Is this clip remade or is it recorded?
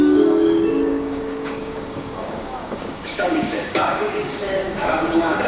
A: remade